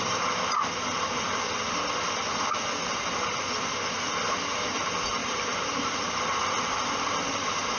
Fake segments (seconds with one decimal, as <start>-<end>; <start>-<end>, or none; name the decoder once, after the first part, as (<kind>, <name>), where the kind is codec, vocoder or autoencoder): 0.9-1.6 (vocoder, BigVGAN v2); 5.2-7.8